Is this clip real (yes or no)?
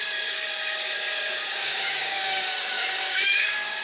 no